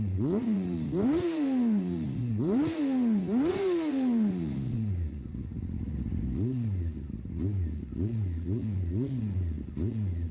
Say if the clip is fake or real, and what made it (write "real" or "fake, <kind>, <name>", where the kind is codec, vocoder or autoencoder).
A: fake, vocoder, Vocos